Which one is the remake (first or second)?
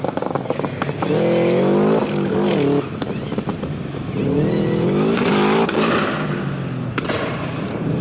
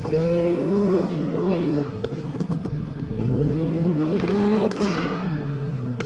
second